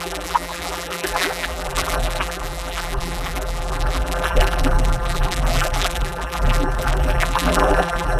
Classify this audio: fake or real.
fake